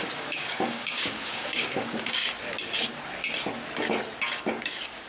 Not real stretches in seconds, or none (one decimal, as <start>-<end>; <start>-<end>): 0.0-2.2; 4.2-5.1